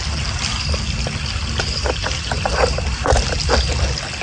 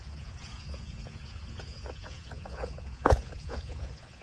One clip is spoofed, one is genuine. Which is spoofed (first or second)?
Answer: second